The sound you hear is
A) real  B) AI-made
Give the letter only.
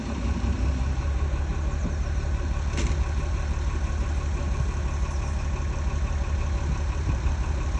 A